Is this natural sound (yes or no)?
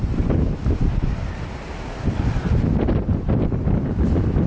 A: yes